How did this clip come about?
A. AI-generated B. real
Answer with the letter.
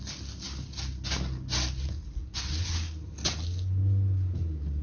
B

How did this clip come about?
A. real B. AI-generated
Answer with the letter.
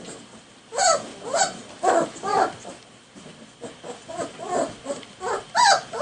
A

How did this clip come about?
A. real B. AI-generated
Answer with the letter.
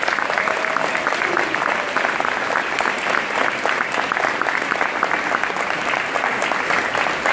A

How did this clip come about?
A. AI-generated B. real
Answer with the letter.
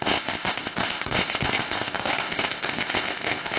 A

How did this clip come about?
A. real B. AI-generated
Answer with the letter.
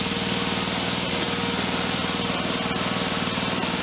A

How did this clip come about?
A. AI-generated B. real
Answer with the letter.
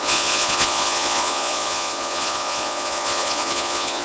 A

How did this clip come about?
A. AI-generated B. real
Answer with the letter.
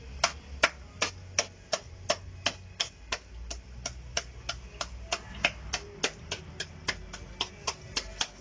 B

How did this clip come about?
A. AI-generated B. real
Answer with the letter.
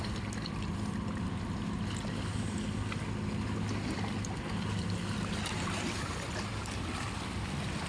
B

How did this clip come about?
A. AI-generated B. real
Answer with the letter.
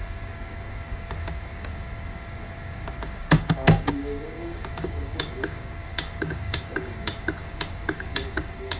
A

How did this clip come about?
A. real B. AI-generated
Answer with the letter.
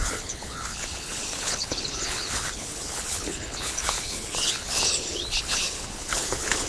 B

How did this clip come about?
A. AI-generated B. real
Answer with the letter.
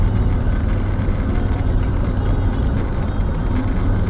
B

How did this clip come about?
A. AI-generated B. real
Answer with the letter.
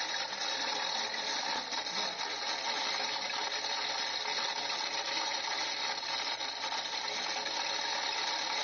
B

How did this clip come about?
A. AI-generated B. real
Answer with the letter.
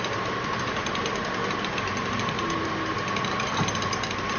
B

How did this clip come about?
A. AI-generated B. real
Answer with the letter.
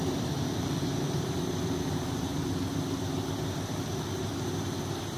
B